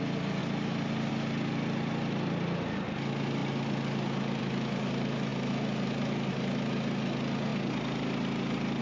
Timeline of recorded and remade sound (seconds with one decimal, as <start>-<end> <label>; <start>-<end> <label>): 0.0-0.4 recorded; 0.4-1.1 remade; 1.1-8.8 recorded